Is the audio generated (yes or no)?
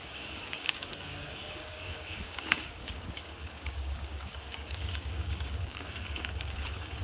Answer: yes